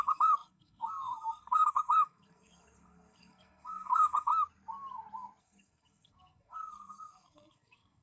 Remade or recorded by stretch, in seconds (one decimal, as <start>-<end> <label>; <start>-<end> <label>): 0.0-4.3 remade; 4.3-5.4 recorded; 5.4-8.0 remade